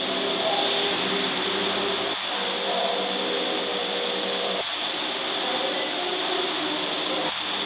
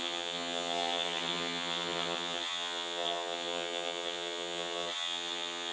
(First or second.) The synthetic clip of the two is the second